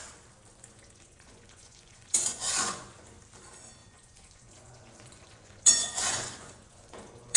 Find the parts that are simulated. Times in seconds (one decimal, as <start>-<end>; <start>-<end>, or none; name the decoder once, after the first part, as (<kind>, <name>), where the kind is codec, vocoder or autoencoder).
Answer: 0.5-3.2 (vocoder, Vocos); 3.8-7.4